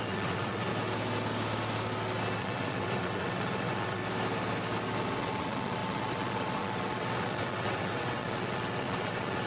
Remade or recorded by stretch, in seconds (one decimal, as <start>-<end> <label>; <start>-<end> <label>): 0.0-0.7 remade; 0.7-2.4 recorded; 2.4-4.0 remade; 4.0-5.2 recorded; 5.2-9.5 remade